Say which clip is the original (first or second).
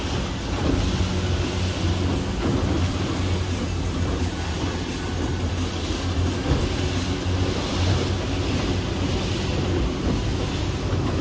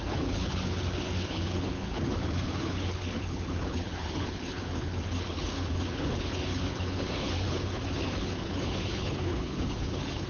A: first